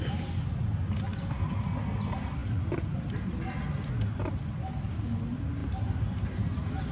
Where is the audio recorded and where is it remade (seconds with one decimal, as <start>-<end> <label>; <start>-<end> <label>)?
0.0-6.9 recorded